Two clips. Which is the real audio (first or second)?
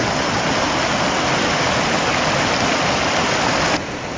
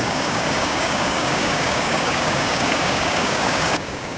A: first